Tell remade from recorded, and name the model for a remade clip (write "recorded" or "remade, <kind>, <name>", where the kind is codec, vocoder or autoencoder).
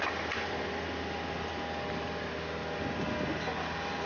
recorded